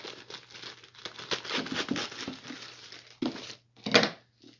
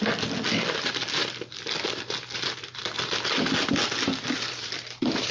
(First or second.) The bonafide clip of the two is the first